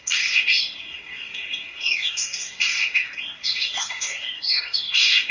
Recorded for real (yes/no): no